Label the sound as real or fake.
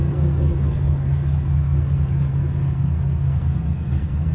fake